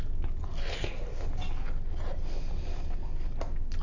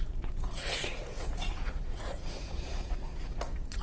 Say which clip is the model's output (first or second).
second